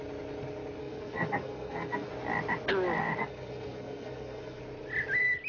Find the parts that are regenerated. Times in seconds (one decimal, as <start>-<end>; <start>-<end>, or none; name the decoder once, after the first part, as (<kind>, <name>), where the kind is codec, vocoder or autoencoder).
0.8-2.1 (codec, SNAC); 3.2-4.6